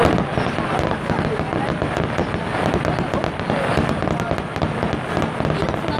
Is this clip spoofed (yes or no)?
no